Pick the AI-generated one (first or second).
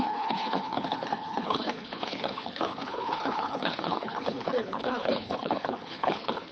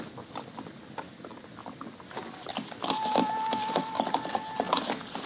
first